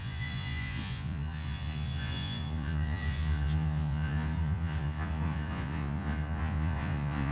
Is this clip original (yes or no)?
no